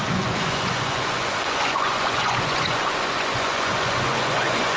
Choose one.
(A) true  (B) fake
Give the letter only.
B